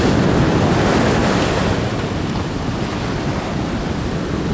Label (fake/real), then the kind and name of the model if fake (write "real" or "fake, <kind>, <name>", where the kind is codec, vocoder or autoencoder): real